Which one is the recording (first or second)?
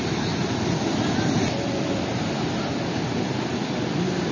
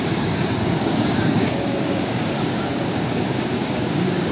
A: first